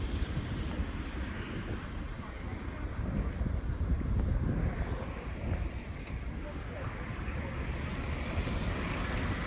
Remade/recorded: recorded